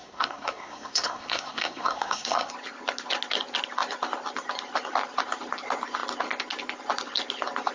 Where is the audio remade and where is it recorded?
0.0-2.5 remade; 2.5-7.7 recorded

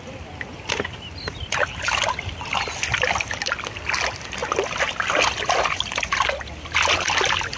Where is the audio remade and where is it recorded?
0.0-7.6 recorded